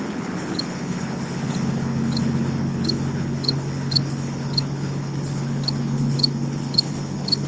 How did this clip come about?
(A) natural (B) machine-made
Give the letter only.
B